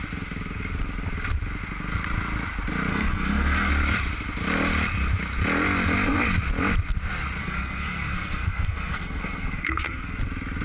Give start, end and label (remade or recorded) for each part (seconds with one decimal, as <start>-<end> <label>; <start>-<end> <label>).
0.0-2.9 recorded; 2.9-3.7 remade; 3.7-7.4 recorded; 7.4-10.2 remade; 10.2-10.6 recorded